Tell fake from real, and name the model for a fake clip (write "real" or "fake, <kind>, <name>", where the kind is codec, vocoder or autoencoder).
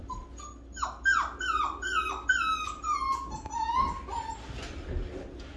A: real